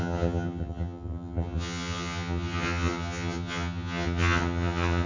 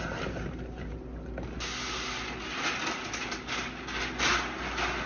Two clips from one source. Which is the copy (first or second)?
first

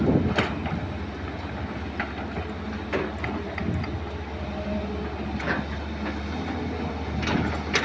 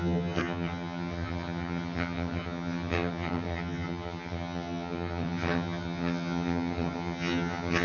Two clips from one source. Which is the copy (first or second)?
second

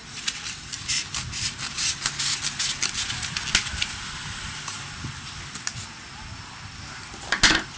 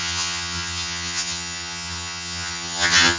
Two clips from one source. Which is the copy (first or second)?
second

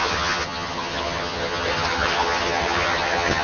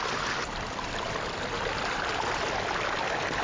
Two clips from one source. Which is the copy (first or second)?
first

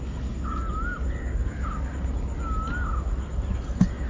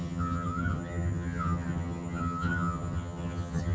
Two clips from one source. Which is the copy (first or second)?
second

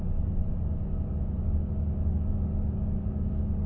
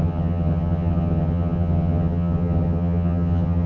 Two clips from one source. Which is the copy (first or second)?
second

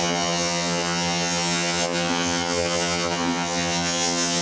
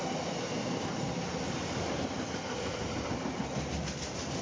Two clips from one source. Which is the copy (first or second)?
first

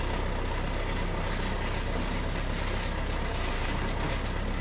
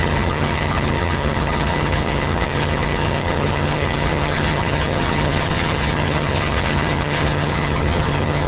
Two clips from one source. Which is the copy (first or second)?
second